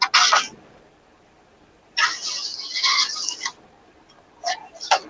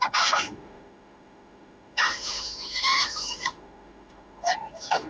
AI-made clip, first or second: second